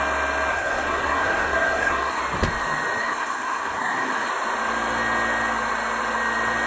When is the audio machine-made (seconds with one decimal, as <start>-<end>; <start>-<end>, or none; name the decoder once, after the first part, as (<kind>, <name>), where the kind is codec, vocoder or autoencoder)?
0.5-2.2 (codec, SNAC); 3.0-4.3